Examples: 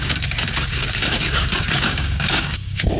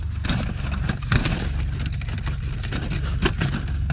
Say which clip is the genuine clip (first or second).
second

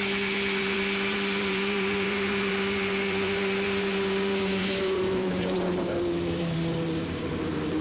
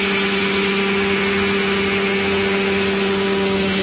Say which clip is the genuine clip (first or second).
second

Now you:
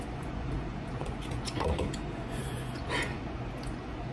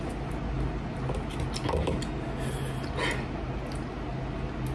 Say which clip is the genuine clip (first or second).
second